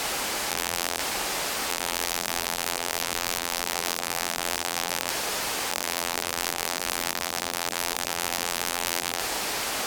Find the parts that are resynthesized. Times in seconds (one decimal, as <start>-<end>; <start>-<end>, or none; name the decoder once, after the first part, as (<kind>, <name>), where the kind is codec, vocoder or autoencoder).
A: 0.5-1.0 (vocoder, BigVGAN v2); 1.7-5.1; 5.7-9.2